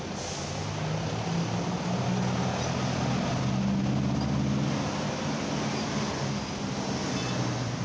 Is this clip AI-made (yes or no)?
no